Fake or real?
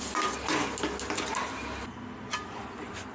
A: real